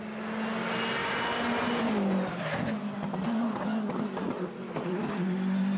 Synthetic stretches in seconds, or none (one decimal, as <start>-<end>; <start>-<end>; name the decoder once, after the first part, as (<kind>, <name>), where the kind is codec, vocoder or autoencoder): 1.0-1.9 (vocoder, BigVGAN v2)